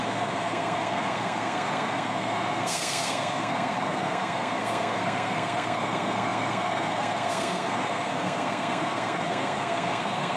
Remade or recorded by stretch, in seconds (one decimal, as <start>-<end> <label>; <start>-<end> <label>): 0.0-10.4 remade